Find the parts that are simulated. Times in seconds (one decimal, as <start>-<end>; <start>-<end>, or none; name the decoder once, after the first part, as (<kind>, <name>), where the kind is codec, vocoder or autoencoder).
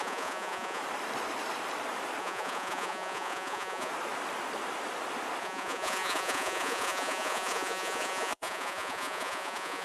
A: 0.0-0.8 (vocoder, Vocos); 2.2-3.9; 5.4-9.8